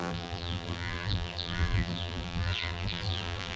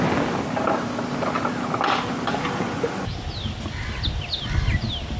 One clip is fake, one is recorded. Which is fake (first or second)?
first